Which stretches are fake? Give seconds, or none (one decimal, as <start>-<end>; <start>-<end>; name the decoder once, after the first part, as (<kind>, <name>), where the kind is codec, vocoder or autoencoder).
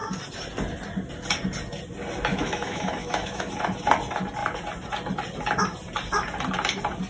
2.3-3.5 (autoencoder, DAC-VAE)